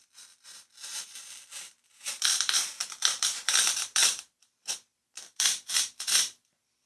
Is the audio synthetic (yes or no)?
yes